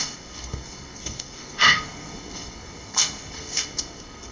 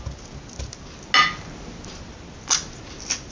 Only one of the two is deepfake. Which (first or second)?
first